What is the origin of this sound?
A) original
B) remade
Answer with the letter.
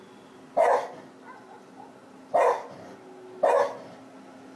A